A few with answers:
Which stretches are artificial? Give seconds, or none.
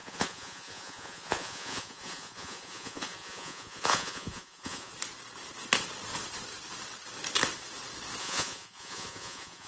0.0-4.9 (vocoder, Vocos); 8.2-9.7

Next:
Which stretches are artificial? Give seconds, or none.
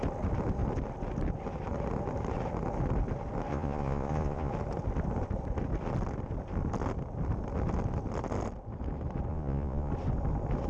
3.5-4.5 (vocoder, Vocos); 9.3-9.9